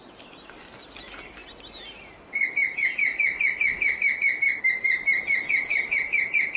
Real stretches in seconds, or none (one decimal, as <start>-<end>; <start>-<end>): 0.0-6.6